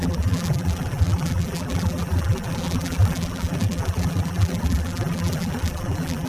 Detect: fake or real fake